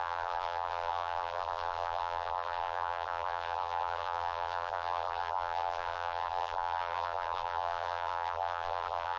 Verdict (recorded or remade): remade